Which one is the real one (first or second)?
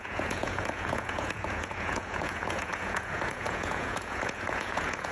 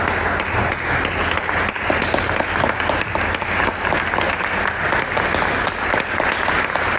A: second